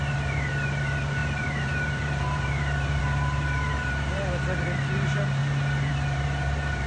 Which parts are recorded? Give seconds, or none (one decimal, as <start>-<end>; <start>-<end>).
5.4-5.9